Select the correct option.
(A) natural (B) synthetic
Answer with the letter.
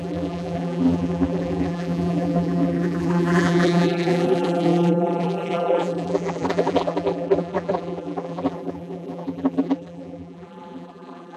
B